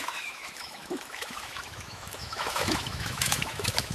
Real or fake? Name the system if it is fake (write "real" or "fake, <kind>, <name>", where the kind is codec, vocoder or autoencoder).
fake, autoencoder, DAC-VAE